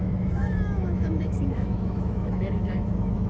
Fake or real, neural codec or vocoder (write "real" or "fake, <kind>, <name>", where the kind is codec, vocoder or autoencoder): fake, autoencoder, DAC-VAE